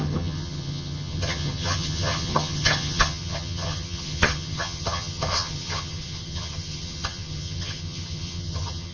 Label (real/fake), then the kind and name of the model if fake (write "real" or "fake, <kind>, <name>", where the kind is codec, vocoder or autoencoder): fake, vocoder, HiFi-GAN